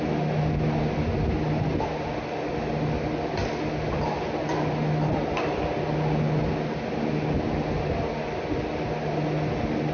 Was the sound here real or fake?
real